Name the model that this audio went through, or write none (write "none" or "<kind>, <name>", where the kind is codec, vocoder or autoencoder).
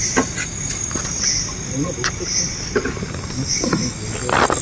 none